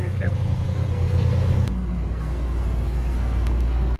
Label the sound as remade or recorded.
remade